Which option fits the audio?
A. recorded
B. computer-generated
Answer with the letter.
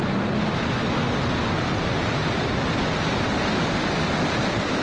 A